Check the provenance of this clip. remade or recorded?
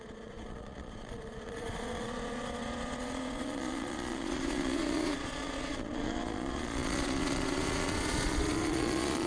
remade